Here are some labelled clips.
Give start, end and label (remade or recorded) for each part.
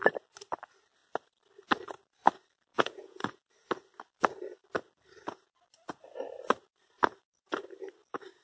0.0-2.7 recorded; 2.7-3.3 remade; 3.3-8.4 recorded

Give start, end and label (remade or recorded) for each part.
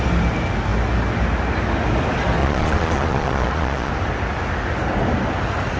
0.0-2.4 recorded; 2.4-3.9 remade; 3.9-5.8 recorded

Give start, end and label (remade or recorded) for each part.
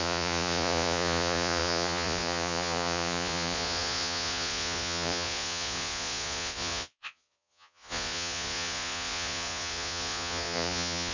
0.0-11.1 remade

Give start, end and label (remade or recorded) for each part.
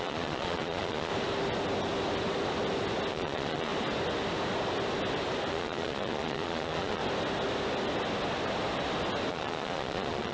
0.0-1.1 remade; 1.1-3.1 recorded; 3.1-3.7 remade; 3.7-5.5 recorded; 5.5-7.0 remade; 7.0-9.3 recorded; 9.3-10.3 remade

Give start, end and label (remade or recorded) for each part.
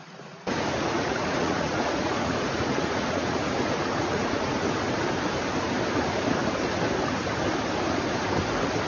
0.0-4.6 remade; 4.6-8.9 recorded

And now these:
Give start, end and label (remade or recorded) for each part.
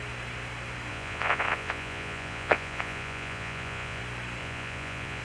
0.0-0.9 recorded; 0.9-4.0 remade; 4.0-4.4 recorded; 4.4-5.2 remade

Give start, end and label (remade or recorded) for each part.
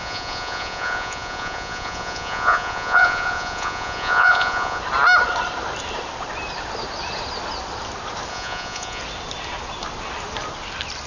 0.0-4.8 remade; 4.8-8.3 recorded; 8.3-9.0 remade; 9.0-11.1 recorded